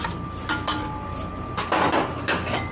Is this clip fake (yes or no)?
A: no